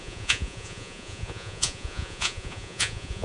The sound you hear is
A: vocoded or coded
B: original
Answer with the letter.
A